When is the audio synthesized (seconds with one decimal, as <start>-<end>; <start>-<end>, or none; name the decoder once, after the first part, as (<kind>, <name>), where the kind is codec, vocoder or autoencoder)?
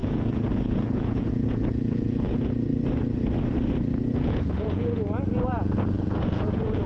0.0-2.7 (vocoder, Vocos); 4.1-6.9